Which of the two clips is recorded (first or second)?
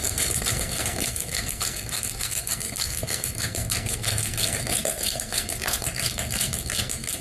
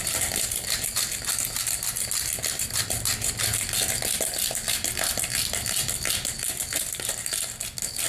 second